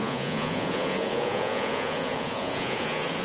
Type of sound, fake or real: fake